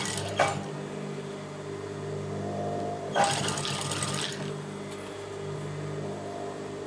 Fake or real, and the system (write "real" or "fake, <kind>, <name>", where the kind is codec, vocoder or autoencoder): real